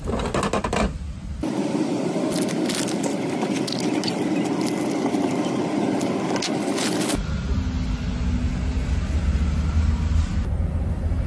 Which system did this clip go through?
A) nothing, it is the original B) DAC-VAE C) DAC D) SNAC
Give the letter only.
A